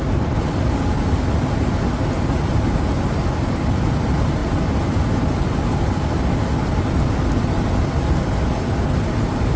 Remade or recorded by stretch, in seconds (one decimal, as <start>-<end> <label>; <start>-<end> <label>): 0.0-9.6 recorded